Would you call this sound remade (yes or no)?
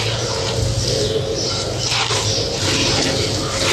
no